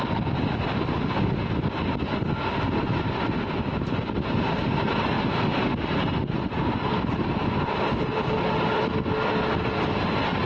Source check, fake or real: real